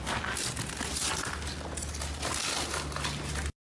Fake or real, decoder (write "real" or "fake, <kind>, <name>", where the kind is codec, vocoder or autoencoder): real